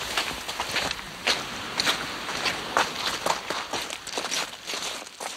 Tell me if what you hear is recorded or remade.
recorded